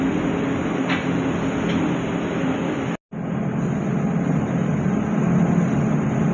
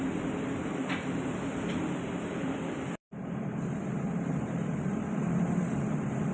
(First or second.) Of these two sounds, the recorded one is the first